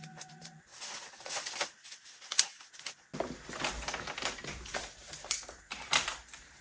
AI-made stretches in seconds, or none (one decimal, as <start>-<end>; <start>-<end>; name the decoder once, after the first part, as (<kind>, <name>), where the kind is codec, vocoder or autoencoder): 0.0-0.7 (vocoder, BigVGAN v2); 3.3-6.6